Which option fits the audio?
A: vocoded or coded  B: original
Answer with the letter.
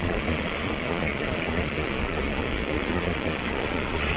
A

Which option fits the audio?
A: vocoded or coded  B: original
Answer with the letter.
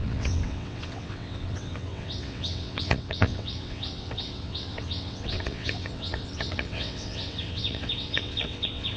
A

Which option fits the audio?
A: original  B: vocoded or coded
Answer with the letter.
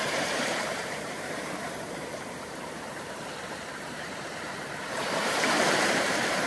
B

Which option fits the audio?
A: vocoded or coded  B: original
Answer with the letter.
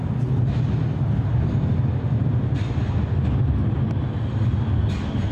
B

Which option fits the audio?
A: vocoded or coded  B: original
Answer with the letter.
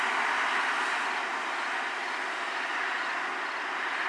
B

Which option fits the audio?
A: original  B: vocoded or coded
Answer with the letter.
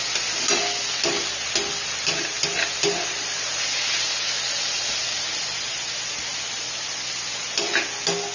A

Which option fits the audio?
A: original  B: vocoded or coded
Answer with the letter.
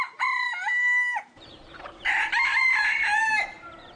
B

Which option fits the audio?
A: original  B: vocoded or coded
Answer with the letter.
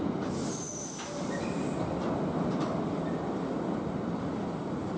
A